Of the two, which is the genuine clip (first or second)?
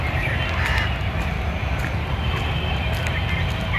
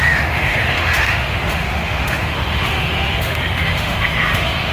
first